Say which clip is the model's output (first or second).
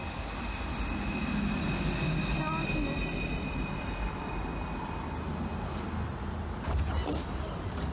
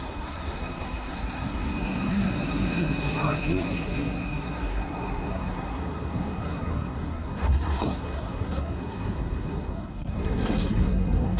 second